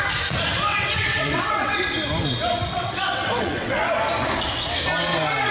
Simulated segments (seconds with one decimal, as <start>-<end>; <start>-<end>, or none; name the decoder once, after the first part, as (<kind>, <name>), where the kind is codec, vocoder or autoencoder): 0.7-1.8 (vocoder, WaveNeXt); 2.7-3.9